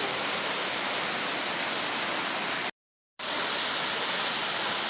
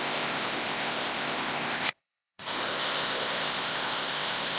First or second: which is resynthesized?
second